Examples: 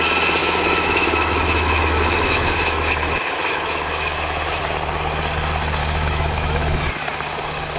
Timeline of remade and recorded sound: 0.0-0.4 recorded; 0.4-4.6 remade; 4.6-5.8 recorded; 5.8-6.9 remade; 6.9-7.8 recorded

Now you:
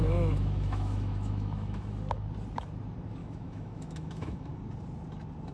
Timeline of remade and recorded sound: 0.0-1.9 remade; 1.9-3.2 recorded; 3.2-4.5 remade; 4.5-5.5 recorded

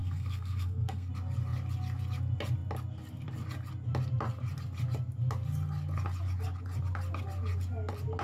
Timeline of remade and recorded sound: 0.0-1.1 remade; 1.1-8.2 recorded